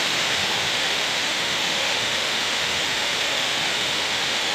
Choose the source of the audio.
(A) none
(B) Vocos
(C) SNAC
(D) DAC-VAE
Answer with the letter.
D